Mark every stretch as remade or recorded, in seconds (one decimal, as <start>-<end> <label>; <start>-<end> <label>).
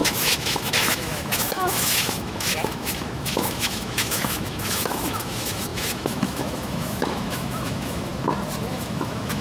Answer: 0.0-8.1 remade; 8.1-8.7 recorded; 8.7-9.4 remade